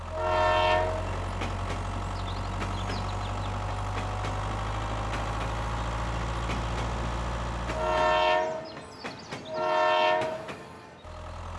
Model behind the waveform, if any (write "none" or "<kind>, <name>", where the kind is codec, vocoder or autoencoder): none